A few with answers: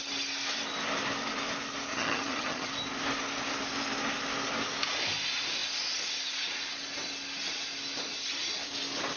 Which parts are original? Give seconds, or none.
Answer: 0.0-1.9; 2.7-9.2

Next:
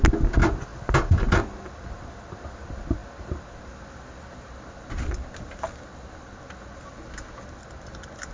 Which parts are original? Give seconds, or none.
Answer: 0.0-8.3